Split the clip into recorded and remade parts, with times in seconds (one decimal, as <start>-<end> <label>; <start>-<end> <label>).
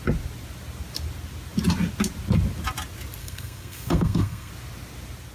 0.0-3.2 recorded; 3.2-4.5 remade; 4.5-5.3 recorded